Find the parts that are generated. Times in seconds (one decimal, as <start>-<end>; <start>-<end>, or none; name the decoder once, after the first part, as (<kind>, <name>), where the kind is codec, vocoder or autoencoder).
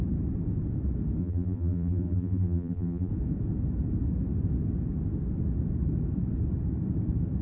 1.2-3.1 (vocoder, BigVGAN v2)